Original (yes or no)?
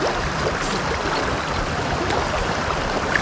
yes